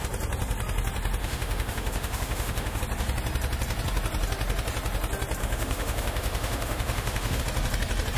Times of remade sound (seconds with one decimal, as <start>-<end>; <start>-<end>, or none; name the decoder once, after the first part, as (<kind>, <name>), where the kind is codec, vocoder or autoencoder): 1.2-2.8 (autoencoder, DAC-VAE); 5.4-7.4